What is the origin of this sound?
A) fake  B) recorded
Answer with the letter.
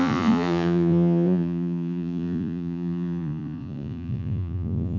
A